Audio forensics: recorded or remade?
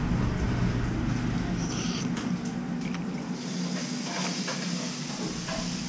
recorded